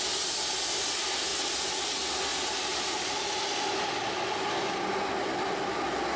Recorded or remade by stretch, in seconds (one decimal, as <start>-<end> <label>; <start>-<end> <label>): 0.0-6.2 recorded